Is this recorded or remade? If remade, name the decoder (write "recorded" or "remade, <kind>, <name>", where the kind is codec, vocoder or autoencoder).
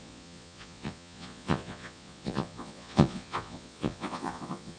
remade, vocoder, Vocos